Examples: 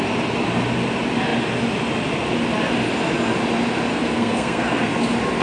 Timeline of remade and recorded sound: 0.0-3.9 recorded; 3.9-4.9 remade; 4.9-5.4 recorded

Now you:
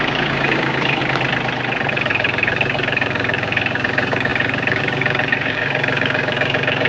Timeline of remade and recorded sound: 0.0-1.0 remade; 1.0-1.9 recorded; 1.9-6.9 remade

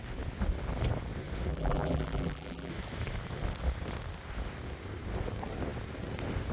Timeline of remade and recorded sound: 0.0-1.5 recorded; 1.5-2.7 remade; 2.7-6.5 recorded

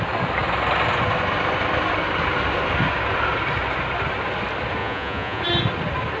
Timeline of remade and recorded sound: 0.0-4.8 recorded; 4.8-5.4 remade; 5.4-6.2 recorded

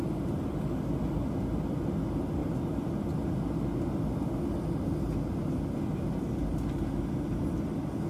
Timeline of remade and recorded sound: 0.0-2.4 recorded; 2.4-3.1 remade; 3.1-8.1 recorded

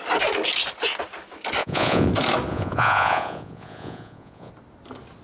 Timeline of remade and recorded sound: 0.0-1.6 recorded; 1.6-2.1 remade; 2.1-2.5 recorded; 2.5-4.5 remade; 4.5-5.2 recorded